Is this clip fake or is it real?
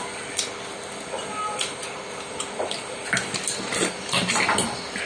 real